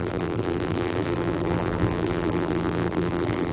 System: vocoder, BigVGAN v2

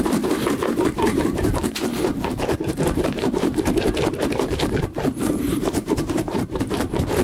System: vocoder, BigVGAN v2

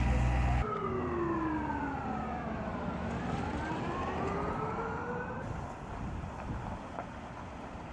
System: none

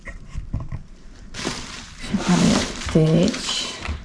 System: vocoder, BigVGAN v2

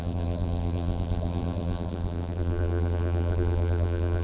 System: vocoder, BigVGAN v2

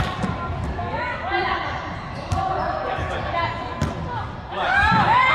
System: none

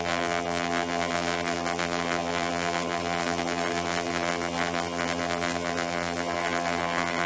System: vocoder, BigVGAN v2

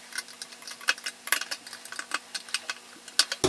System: none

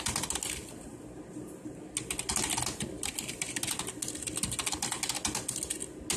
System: none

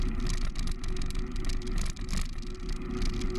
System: none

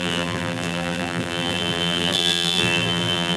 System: vocoder, BigVGAN v2